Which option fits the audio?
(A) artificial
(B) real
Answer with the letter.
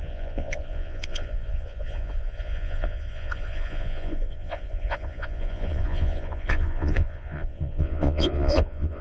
A